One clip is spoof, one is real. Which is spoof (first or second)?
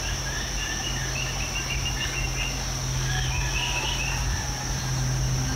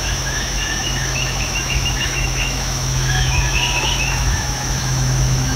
second